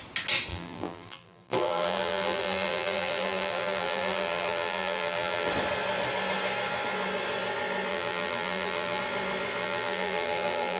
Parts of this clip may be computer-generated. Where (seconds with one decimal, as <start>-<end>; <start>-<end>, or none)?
0.5-5.5; 7.9-9.0; 9.6-10.8